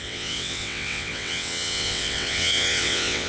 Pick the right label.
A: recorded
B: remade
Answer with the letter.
B